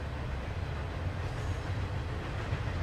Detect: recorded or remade recorded